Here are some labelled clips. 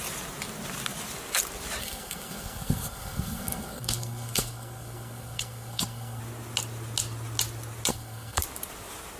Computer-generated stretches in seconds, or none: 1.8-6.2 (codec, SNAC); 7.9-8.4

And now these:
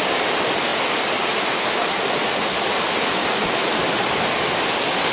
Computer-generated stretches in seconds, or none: none